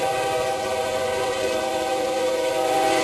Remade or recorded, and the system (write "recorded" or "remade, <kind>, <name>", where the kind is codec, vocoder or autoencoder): remade, vocoder, Vocos